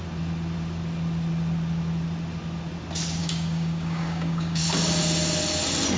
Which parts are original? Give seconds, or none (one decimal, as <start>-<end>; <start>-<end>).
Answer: 0.0-3.2; 4.6-6.0